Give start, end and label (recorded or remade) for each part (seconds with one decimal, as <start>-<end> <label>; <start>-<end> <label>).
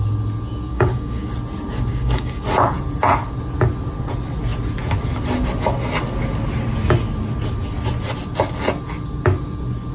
0.0-0.7 recorded; 0.7-1.3 remade; 1.3-1.9 recorded; 1.9-2.4 remade; 2.4-9.9 recorded